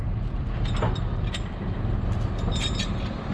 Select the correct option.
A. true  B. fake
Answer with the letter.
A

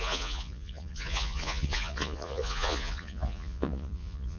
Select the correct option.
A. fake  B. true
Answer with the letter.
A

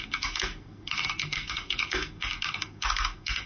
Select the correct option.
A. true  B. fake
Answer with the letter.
B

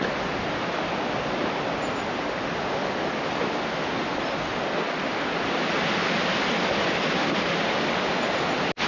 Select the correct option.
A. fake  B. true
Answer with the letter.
B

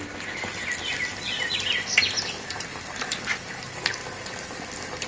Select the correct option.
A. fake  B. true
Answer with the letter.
B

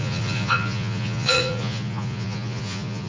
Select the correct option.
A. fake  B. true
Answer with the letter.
A